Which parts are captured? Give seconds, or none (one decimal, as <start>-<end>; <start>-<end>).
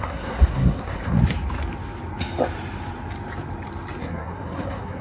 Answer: 1.2-4.0